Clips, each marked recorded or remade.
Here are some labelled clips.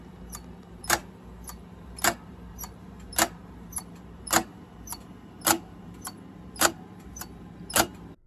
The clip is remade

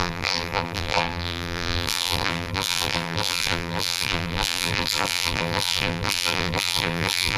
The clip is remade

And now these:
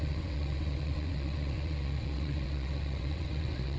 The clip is remade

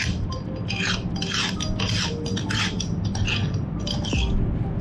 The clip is recorded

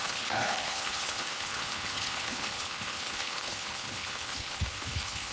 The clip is remade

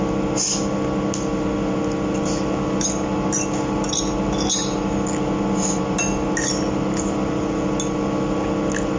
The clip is recorded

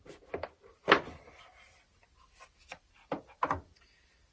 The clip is recorded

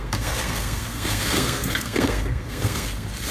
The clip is remade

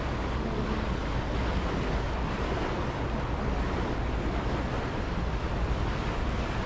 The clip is recorded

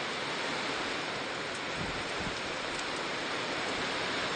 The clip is remade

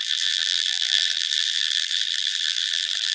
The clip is remade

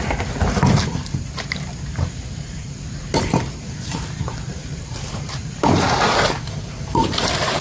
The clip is remade